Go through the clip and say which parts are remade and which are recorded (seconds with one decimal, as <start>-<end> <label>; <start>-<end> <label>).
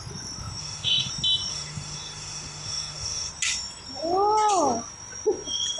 0.0-0.6 recorded; 0.6-1.1 remade; 1.1-1.5 recorded; 1.5-3.3 remade; 3.3-5.8 recorded